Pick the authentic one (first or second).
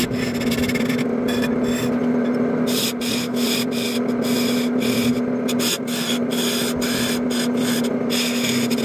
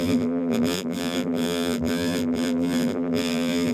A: first